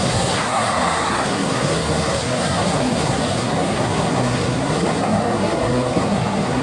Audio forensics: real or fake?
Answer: fake